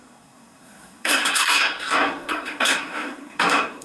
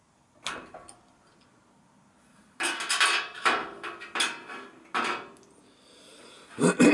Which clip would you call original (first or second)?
second